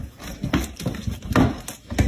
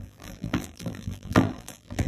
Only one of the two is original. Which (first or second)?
first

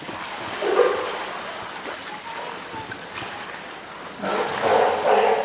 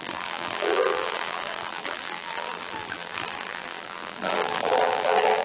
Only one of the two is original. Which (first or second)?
first